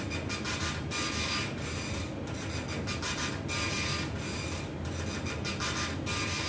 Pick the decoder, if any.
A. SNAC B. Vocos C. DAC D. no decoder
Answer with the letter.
D